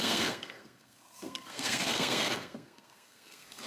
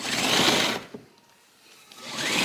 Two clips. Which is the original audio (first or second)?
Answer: second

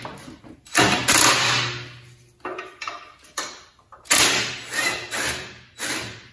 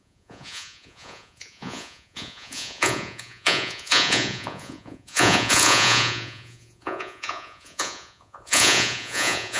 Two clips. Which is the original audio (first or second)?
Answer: first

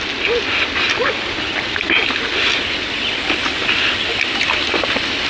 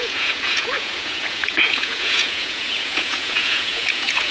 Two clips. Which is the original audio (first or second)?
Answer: first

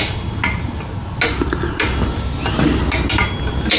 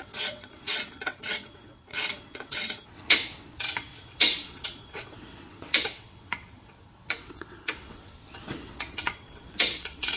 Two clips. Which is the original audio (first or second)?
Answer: first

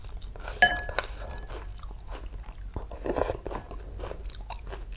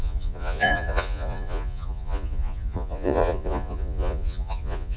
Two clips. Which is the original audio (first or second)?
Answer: first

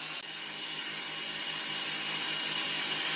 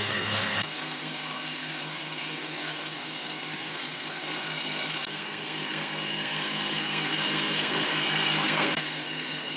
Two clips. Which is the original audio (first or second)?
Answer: first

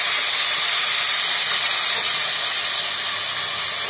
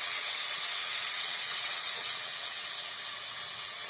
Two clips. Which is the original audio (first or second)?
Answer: first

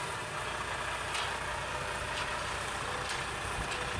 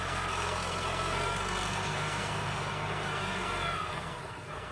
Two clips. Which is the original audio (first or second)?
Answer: first